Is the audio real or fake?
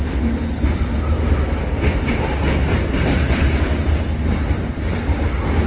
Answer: real